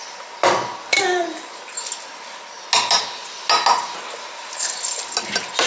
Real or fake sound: real